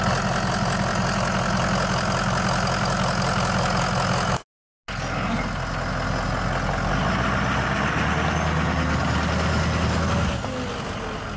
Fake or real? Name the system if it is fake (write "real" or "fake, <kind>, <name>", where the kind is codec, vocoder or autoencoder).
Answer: real